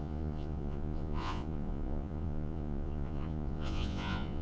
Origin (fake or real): fake